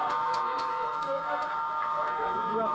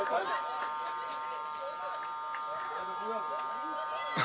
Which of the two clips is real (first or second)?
second